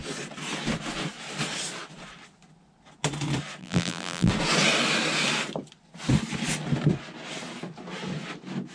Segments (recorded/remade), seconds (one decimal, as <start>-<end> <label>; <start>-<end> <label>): 0.0-3.6 recorded; 3.6-4.3 remade; 4.3-8.7 recorded